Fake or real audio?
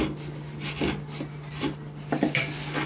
real